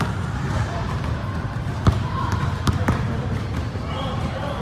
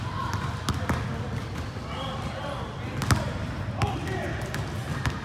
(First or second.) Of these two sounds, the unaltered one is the second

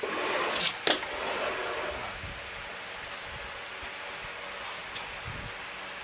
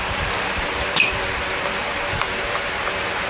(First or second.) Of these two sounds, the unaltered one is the first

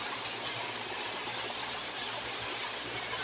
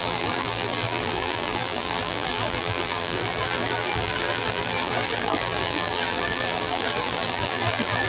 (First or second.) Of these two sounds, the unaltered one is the first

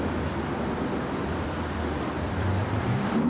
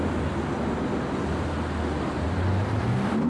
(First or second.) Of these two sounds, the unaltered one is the second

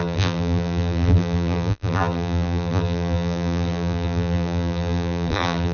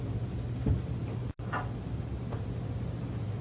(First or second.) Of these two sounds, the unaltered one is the second